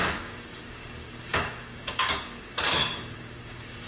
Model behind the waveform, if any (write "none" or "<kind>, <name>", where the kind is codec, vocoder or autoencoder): codec, DAC